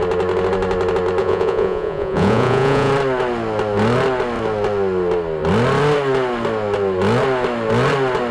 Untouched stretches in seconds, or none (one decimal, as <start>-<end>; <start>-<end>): 0.0-1.2; 2.9-8.3

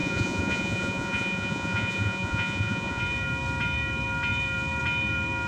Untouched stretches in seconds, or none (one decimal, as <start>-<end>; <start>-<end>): 3.0-5.5

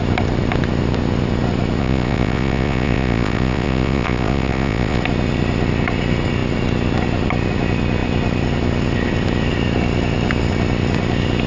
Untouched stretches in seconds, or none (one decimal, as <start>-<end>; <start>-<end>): 0.0-1.8; 5.0-11.5

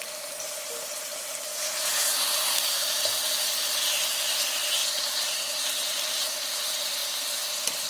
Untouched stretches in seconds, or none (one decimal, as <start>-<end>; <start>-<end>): 0.0-1.5; 2.4-7.9